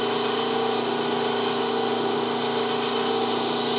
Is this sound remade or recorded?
recorded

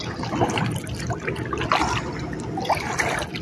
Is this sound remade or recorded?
recorded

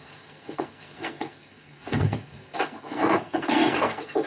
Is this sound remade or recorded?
remade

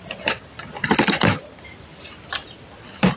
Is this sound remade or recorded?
remade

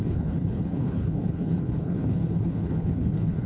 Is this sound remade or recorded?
remade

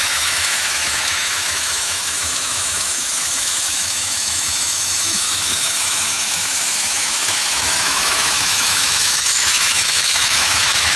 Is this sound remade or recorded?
remade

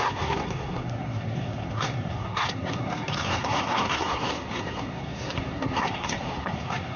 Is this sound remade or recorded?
remade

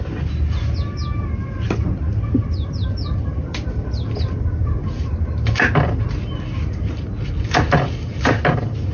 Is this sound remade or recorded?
recorded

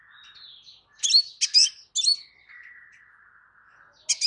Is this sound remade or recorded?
recorded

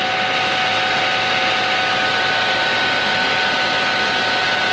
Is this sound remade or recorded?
recorded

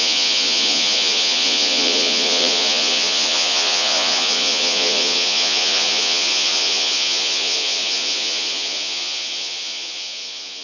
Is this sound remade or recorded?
remade